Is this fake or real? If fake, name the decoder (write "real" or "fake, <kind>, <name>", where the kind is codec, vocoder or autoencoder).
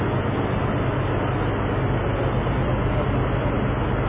real